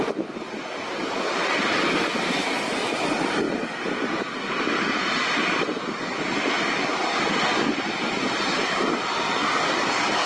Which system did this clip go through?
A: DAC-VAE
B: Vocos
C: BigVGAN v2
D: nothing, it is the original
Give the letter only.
D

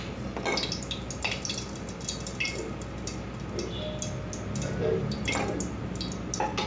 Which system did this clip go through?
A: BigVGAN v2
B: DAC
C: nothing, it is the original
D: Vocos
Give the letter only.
C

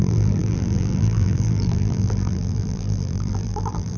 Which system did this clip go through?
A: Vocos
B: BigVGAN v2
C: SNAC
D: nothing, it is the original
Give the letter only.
B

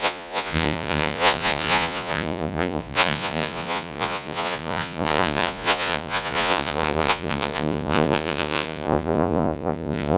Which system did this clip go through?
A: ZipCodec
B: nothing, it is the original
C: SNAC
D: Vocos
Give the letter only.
D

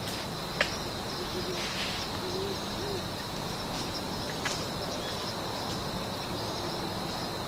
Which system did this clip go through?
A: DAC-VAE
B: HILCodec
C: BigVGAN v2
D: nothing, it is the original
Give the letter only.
D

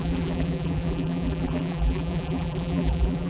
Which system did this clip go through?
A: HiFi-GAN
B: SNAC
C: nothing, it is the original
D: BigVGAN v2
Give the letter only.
D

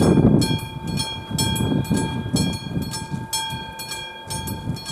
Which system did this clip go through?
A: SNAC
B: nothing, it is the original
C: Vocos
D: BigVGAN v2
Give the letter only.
B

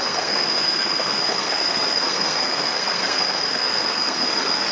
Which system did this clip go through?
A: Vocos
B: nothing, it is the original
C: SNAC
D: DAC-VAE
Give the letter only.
C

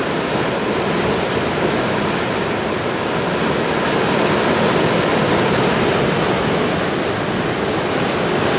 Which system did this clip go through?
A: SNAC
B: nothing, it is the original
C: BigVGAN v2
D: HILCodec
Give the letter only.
B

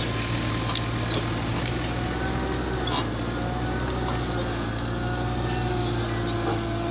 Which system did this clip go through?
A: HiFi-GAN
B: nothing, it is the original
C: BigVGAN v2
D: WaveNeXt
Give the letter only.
B